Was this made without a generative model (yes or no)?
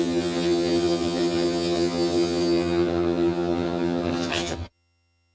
no